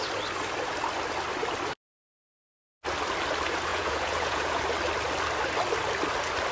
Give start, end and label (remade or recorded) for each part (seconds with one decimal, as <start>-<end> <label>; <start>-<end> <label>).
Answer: 0.0-3.7 recorded; 3.7-4.6 remade; 4.6-6.5 recorded